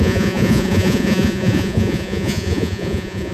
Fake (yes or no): yes